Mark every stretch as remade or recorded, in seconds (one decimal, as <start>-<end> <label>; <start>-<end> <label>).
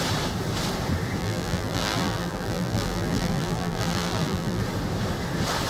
0.0-1.2 recorded; 1.2-4.6 remade; 4.6-5.7 recorded